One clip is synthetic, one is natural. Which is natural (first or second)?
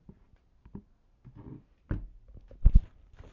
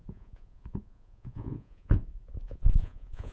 first